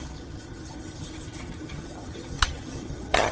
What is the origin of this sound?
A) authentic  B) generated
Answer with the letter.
B